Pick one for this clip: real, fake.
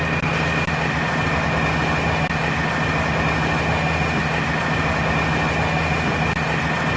real